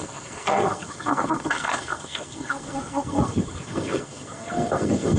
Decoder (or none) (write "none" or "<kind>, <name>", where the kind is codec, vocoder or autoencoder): codec, SNAC